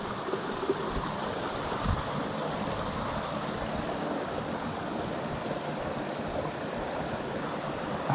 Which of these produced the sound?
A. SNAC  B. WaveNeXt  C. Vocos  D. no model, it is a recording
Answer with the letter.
D